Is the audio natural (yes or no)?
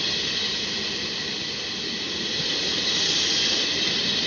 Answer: yes